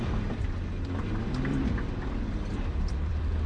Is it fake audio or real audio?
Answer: fake